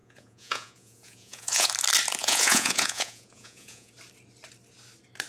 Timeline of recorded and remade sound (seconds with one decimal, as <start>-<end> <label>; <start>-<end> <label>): 0.0-1.7 remade; 1.7-2.2 recorded; 2.2-3.9 remade; 3.9-5.3 recorded